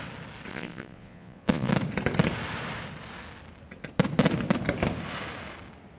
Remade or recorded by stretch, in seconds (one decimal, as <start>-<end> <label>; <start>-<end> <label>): 0.0-0.5 recorded; 0.5-1.7 remade; 1.7-6.0 recorded